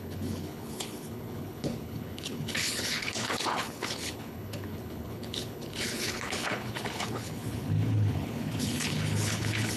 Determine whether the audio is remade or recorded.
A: remade